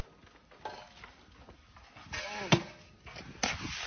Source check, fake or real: real